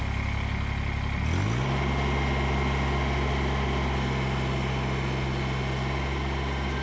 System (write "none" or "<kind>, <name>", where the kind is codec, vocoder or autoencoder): none